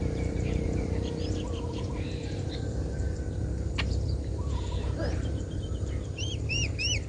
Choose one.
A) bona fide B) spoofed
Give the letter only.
B